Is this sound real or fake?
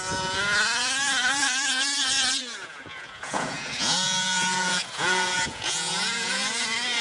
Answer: fake